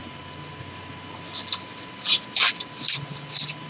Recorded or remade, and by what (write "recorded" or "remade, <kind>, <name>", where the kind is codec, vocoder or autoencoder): recorded